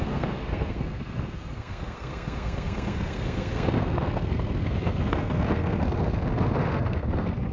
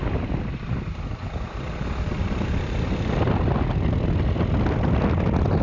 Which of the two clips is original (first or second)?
second